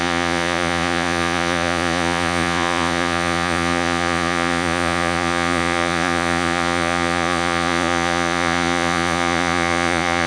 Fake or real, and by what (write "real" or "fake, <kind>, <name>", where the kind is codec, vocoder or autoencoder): fake, vocoder, Vocos